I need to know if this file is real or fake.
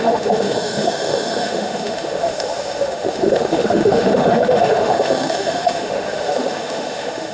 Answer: fake